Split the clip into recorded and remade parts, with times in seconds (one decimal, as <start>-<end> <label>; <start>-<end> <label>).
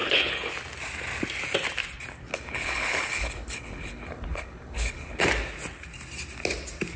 0.0-0.5 remade; 0.5-2.3 recorded; 2.3-5.2 remade; 5.2-7.0 recorded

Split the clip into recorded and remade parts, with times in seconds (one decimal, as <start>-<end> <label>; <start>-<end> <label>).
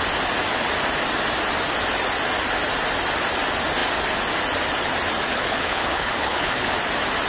0.0-5.3 recorded; 5.3-6.7 remade; 6.7-7.3 recorded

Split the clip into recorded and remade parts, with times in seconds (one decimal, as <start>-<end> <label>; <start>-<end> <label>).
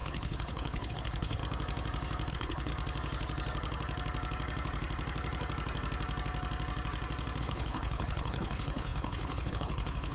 0.0-1.4 remade; 1.4-2.3 recorded; 2.3-2.7 remade; 2.7-7.4 recorded; 7.4-10.1 remade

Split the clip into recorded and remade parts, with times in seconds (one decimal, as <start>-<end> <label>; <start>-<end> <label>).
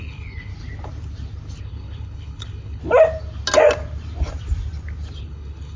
0.0-0.5 remade; 0.5-1.6 recorded; 1.6-2.8 remade; 2.8-5.2 recorded; 5.2-5.8 remade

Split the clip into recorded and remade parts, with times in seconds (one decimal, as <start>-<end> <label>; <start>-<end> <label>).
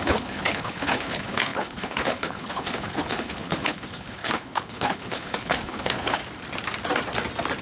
0.0-6.2 remade; 6.2-7.6 recorded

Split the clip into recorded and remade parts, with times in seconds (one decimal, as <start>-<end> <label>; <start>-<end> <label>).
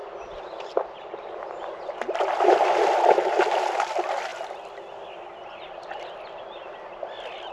0.0-7.5 recorded